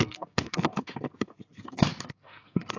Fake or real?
fake